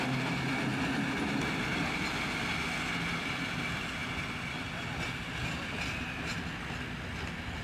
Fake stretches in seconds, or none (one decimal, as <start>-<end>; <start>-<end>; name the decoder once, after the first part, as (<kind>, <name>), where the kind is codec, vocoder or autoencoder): none